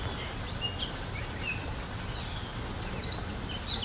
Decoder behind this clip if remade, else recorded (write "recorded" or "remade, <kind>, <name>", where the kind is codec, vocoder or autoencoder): recorded